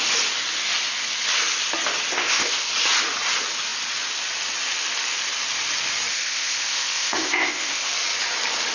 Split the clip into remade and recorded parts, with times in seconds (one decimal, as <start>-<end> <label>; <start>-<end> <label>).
0.0-2.1 recorded; 2.1-2.7 remade; 2.7-6.1 recorded; 6.1-7.9 remade; 7.9-8.7 recorded